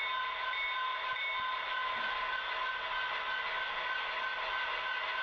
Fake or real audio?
real